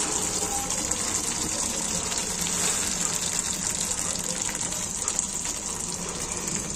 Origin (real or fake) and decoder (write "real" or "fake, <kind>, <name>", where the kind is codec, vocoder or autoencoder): real